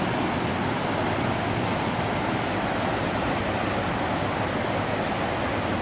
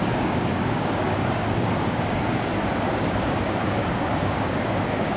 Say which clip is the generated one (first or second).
second